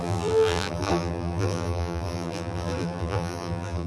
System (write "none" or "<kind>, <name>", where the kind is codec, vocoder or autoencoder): vocoder, BigVGAN v2